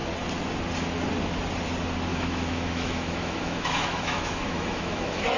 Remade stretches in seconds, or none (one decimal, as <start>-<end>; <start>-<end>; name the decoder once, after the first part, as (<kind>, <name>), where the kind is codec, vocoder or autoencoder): 2.1-5.4 (autoencoder, DAC-VAE)